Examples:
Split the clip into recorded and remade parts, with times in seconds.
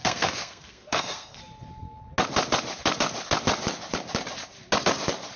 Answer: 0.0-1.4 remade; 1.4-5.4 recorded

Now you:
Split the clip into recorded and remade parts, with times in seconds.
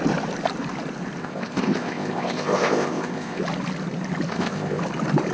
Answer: 0.0-1.2 recorded; 1.2-3.4 remade; 3.4-4.3 recorded; 4.3-4.8 remade; 4.8-5.3 recorded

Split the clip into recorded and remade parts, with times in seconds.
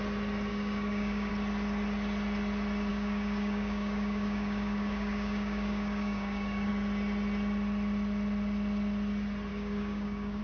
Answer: 0.0-0.5 recorded; 0.5-1.3 remade; 1.3-2.9 recorded; 2.9-6.7 remade; 6.7-9.5 recorded; 9.5-10.4 remade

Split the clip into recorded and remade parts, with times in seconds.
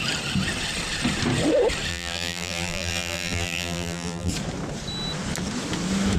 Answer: 0.0-1.9 recorded; 1.9-4.3 remade; 4.3-6.2 recorded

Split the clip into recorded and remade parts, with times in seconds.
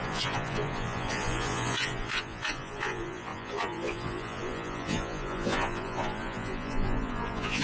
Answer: 0.0-7.6 remade